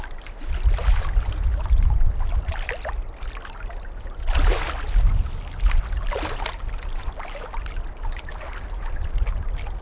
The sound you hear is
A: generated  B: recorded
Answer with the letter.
B